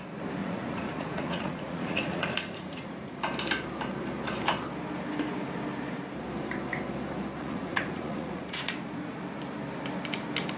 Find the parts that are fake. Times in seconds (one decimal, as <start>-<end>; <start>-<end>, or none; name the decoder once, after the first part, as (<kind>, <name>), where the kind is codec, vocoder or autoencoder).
0.4-2.9 (vocoder, Vocos); 7.4-9.2